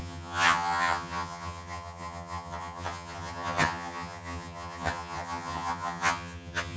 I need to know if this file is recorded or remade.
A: remade